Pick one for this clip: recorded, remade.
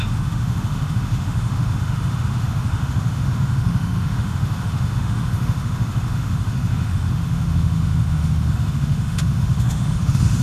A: remade